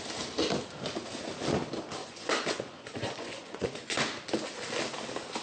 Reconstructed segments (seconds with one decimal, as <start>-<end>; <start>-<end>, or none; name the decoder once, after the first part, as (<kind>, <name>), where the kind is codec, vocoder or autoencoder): 2.0-4.0 (vocoder, Vocos)